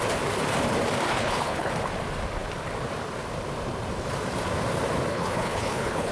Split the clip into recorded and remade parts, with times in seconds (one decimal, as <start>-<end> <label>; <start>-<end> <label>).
0.0-1.1 recorded; 1.1-1.7 remade; 1.7-5.1 recorded; 5.1-6.1 remade